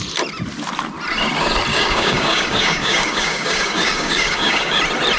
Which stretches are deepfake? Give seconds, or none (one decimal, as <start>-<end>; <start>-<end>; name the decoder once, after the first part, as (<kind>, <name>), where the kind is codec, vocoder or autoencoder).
1.7-4.8 (codec, DAC)